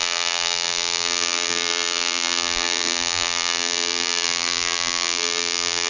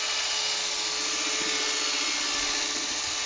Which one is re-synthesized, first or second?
first